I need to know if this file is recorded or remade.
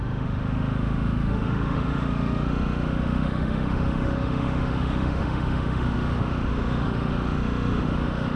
remade